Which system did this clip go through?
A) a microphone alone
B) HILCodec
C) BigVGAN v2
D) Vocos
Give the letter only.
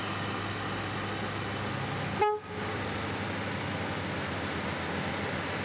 A